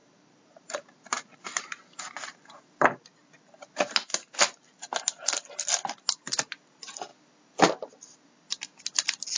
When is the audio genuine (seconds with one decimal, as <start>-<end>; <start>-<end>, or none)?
2.9-9.4

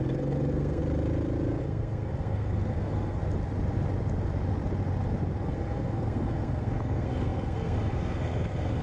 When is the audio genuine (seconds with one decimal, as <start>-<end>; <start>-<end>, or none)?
0.8-1.6; 3.2-5.4

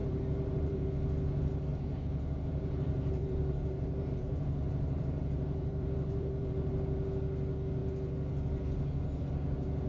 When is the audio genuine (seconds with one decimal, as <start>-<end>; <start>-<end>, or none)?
0.9-1.7; 6.7-9.9

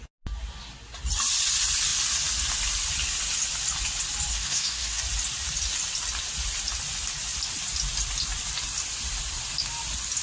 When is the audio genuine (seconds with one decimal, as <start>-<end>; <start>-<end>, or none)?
0.0-4.3; 5.0-10.2

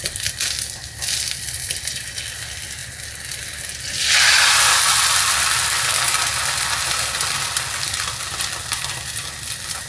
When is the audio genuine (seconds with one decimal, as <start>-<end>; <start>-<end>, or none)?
0.0-9.9

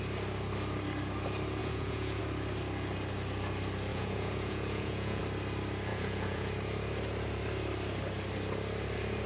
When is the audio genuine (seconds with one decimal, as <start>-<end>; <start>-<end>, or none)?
0.0-1.6; 2.2-3.9; 5.2-5.9; 6.5-9.3